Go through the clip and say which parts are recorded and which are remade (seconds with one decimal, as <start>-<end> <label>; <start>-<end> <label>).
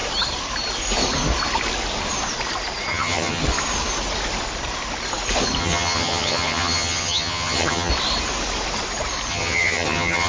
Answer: 0.0-2.9 recorded; 2.9-3.4 remade; 3.4-5.6 recorded; 5.6-7.9 remade; 7.9-9.3 recorded; 9.3-10.3 remade